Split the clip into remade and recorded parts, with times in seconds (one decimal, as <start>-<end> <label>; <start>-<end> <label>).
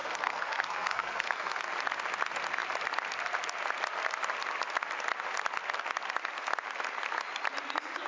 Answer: 0.0-1.6 remade; 1.6-8.1 recorded